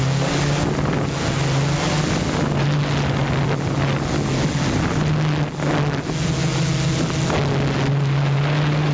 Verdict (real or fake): real